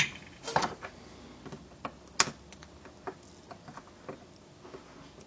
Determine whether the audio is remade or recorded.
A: recorded